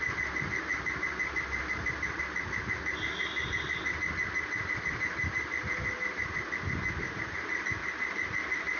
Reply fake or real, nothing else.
real